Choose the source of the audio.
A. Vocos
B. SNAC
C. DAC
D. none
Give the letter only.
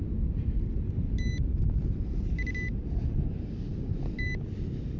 D